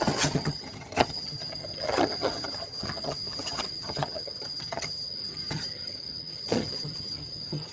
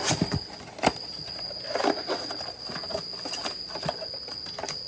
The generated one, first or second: first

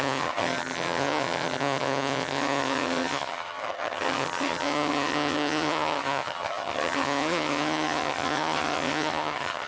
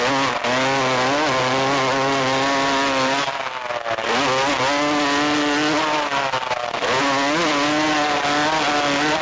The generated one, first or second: first